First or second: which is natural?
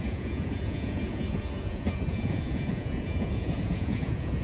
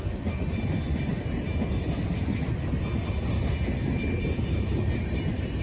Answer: second